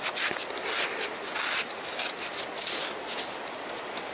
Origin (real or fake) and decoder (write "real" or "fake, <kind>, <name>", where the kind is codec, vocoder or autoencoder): real